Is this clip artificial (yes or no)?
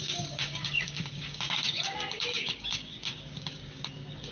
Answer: yes